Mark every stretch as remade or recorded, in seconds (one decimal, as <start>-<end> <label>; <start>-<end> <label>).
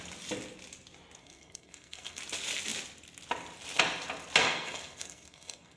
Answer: 0.0-1.2 recorded; 1.2-2.2 remade; 2.2-4.4 recorded; 4.4-5.8 remade